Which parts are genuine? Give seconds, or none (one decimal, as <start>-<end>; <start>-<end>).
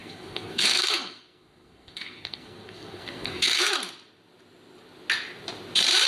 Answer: 3.7-6.1